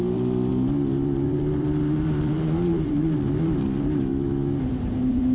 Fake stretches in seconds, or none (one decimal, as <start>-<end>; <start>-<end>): 0.0-4.1; 4.6-5.3